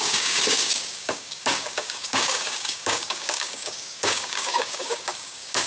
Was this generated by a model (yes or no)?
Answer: yes